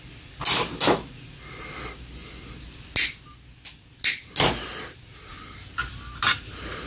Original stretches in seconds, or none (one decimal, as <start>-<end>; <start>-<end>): 0.0-6.9